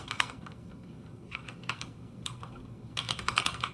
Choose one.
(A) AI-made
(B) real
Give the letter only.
A